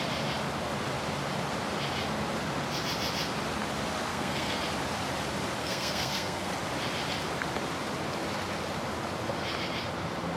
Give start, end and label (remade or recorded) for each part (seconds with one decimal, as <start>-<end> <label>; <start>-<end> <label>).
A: 0.0-4.1 recorded; 4.1-4.6 remade; 4.6-5.6 recorded; 5.6-6.5 remade; 6.5-10.4 recorded